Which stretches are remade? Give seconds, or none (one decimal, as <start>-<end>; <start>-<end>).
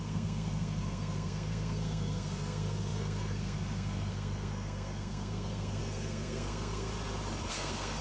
0.0-6.9; 7.5-8.0